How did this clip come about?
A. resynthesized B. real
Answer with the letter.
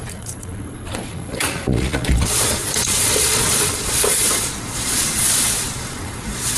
A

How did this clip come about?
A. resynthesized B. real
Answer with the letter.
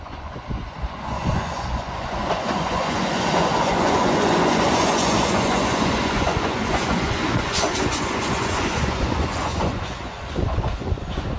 A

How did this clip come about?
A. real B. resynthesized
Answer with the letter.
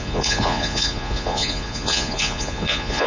B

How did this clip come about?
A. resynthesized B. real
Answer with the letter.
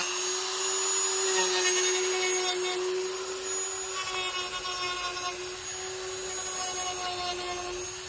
B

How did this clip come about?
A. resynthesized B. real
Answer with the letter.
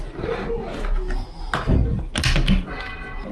B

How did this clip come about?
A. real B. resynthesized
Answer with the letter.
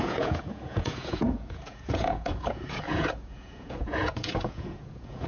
B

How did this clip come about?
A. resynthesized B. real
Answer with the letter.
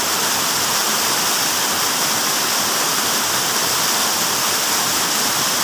B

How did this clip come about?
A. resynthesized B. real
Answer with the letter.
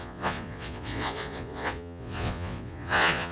A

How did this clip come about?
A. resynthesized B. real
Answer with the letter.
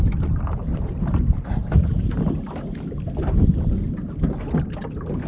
B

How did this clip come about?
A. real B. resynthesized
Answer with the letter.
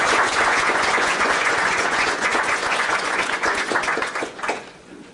B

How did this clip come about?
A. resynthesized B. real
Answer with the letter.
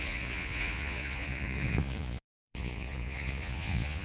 A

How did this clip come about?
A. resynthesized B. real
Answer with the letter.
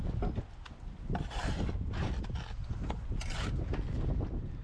B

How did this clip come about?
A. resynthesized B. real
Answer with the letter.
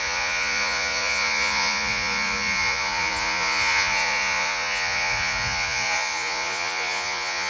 A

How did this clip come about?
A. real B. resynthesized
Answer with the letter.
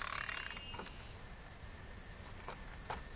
A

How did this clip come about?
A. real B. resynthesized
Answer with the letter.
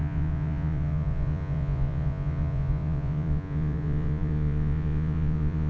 B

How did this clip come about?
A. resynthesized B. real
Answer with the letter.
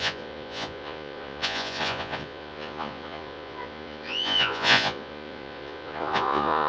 A